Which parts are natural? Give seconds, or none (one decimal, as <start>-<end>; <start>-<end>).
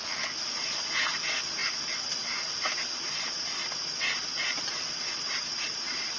0.0-6.2